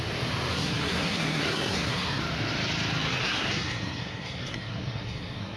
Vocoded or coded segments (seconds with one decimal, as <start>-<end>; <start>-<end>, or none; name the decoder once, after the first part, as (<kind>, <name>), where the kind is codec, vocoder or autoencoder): 0.5-2.2 (codec, SNAC); 3.2-5.6

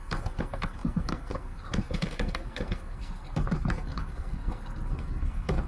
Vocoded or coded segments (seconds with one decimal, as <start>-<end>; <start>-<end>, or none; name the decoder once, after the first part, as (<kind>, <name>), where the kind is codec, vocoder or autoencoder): 0.0-5.7 (codec, SNAC)

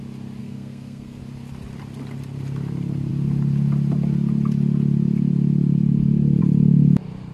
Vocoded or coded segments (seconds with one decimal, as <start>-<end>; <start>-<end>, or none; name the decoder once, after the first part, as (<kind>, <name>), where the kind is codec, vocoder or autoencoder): 0.4-1.2 (codec, SNAC)

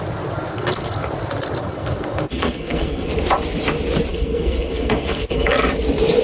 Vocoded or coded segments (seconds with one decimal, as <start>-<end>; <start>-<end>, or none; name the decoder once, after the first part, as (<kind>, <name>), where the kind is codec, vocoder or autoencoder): 0.5-1.1 (codec, SNAC); 1.6-3.1; 4.1-5.7

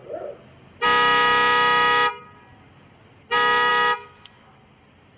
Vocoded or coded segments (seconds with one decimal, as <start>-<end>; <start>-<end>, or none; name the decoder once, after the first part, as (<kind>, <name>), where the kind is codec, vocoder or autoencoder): none

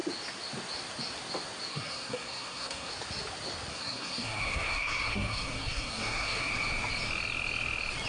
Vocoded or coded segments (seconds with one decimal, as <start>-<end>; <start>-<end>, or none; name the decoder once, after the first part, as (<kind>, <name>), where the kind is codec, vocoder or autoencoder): 1.7-2.9 (codec, SNAC); 3.7-6.5

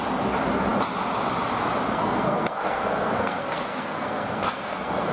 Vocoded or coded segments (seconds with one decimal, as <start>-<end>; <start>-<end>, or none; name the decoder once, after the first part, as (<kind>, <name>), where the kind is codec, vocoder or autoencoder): 1.9-5.1 (codec, SNAC)